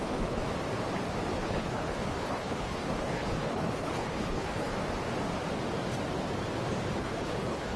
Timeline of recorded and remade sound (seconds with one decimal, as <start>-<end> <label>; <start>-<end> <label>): 0.0-0.4 remade; 0.4-1.3 recorded; 1.3-4.7 remade; 4.7-7.0 recorded; 7.0-7.8 remade